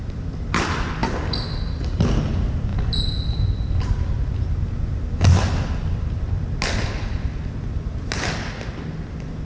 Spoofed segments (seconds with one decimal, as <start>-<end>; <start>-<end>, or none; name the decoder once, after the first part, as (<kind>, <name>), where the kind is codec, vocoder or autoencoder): none